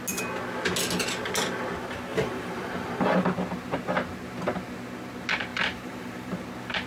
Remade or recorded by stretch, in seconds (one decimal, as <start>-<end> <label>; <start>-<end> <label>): 0.0-2.1 recorded; 2.1-3.2 remade; 3.2-5.5 recorded; 5.5-6.4 remade; 6.4-6.9 recorded